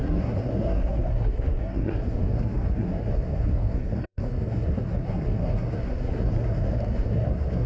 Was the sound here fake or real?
fake